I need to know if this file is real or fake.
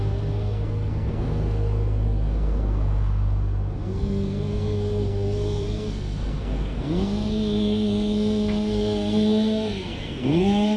fake